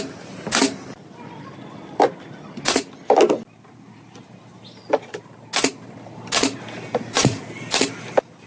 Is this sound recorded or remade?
recorded